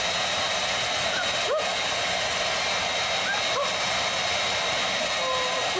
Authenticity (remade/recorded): recorded